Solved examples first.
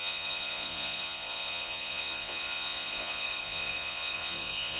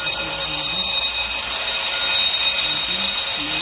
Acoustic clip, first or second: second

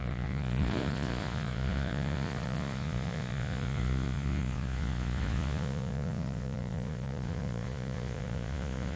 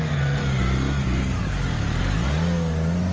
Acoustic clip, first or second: second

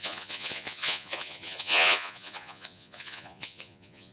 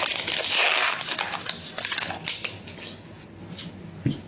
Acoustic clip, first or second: second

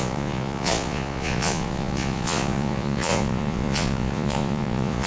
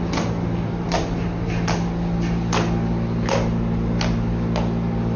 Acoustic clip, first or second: second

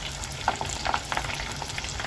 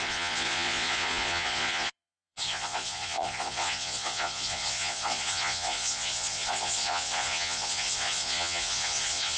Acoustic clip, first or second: first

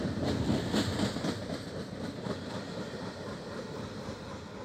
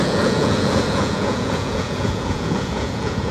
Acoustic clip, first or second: first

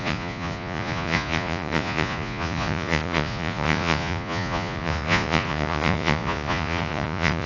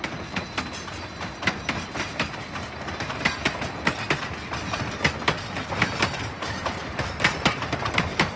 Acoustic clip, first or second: second